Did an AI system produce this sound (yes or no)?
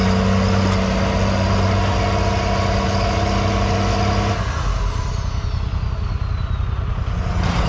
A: no